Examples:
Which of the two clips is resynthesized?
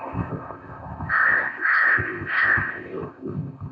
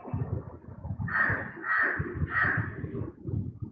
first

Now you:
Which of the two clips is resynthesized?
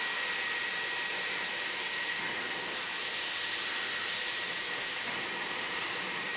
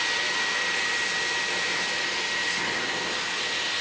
first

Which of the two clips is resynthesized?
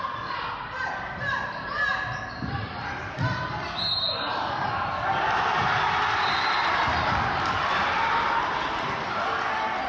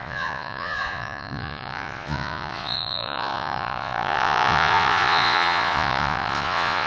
second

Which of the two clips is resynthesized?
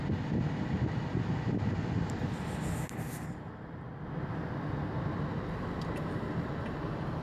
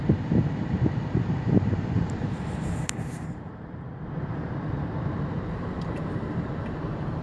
second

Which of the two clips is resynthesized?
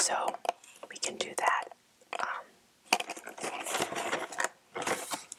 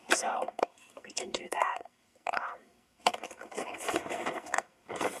second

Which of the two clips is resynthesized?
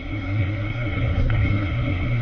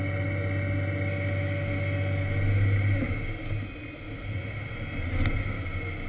first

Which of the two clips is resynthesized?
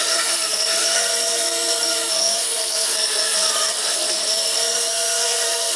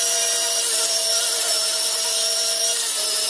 first